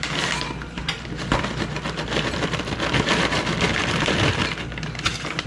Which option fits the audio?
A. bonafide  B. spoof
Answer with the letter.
B